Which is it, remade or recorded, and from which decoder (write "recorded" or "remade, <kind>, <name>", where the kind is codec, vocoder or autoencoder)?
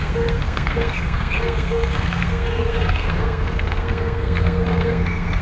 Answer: remade, codec, SNAC